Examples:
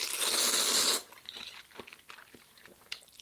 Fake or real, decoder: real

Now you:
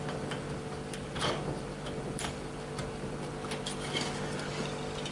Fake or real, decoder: real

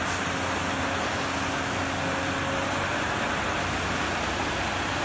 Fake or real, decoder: real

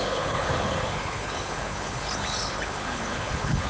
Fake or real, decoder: fake, codec, HILCodec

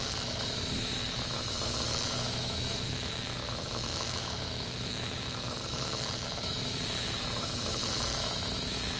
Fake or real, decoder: fake, autoencoder, DAC-VAE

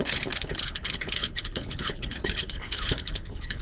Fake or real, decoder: fake, codec, HILCodec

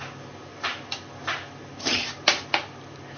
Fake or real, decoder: real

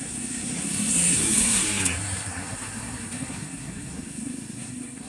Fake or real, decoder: fake, codec, SNAC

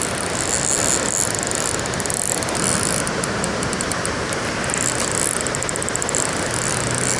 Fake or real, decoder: real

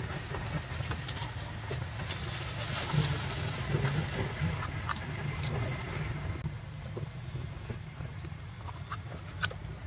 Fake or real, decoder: real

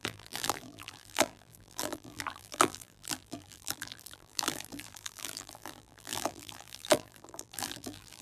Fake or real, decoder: fake, vocoder, BigVGAN v2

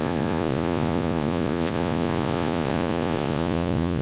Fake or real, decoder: fake, vocoder, Vocos